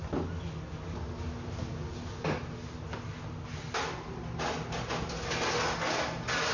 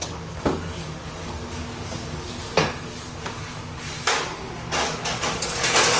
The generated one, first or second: second